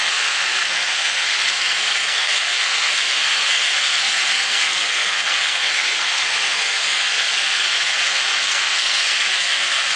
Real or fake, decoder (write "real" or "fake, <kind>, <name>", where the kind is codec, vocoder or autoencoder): fake, codec, SNAC